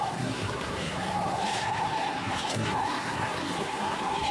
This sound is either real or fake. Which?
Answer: fake